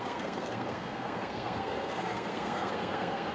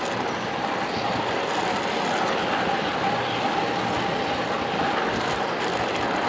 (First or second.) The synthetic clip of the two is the first